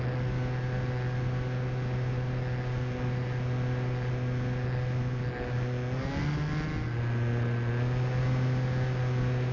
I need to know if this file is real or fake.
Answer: real